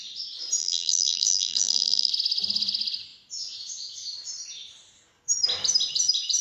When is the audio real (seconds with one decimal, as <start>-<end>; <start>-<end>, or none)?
0.0-0.6; 2.1-6.4